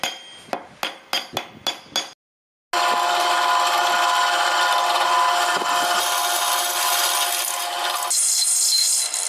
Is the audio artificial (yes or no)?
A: no